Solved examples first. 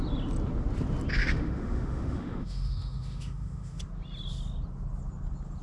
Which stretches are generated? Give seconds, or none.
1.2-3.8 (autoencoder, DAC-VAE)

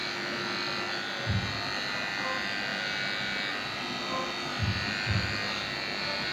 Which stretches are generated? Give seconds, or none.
4.5-5.6 (vocoder, BigVGAN v2)

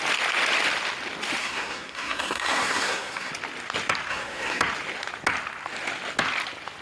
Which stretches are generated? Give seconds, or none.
1.4-3.3 (codec, SNAC); 4.1-4.6

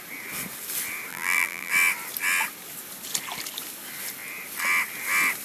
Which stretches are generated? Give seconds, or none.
1.1-1.7 (vocoder, BigVGAN v2)

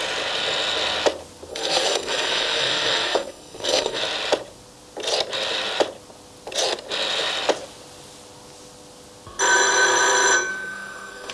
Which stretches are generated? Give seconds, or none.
1.5-4.0 (codec, SNAC); 10.5-11.3

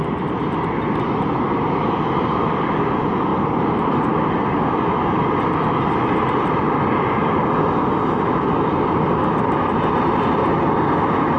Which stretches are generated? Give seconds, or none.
3.3-5.1 (vocoder, BigVGAN v2); 10.4-11.4

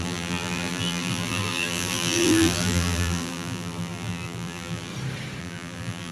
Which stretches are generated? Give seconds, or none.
0.0-4.9 (vocoder, BigVGAN v2); 5.4-6.1

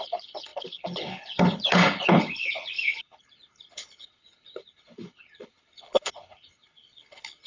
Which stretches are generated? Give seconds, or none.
0.0-7.5 (codec, HILCodec)